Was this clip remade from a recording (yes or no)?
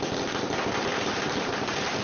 no